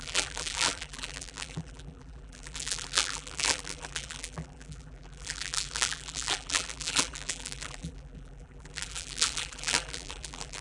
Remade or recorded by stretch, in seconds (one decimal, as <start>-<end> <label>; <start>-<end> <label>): 0.0-10.6 remade